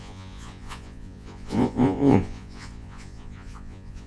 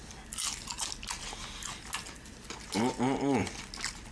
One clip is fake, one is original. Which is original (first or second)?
second